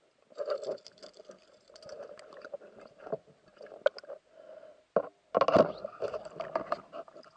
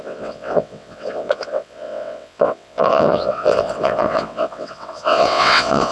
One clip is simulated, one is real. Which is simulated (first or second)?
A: second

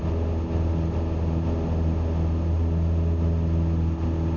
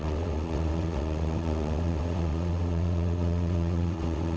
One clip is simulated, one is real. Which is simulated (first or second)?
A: second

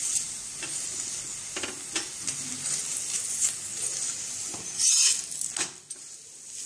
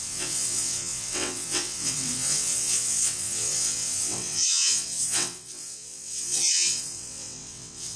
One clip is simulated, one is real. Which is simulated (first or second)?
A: second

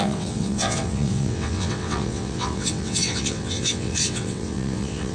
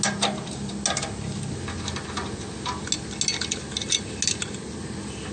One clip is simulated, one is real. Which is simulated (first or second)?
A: first